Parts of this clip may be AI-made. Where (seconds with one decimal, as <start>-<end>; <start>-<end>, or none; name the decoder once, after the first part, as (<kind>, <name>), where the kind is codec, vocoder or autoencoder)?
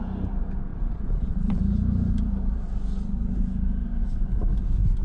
0.7-1.6 (vocoder, Vocos)